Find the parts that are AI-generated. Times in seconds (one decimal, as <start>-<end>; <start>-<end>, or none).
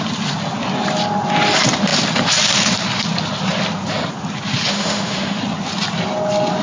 4.7-5.4